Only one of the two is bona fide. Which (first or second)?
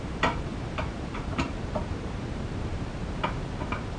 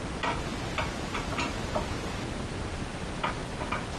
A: second